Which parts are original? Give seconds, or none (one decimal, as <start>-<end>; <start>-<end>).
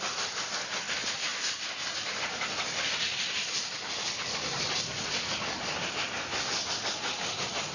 0.0-1.3; 5.7-7.7